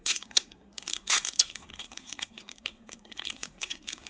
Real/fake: fake